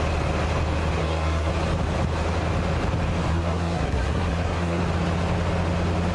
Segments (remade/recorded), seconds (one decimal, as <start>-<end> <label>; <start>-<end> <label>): 0.0-1.0 recorded; 1.0-1.5 remade; 1.5-3.3 recorded; 3.3-4.8 remade; 4.8-6.1 recorded